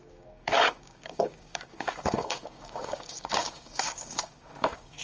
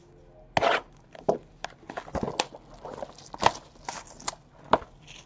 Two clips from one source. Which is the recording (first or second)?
second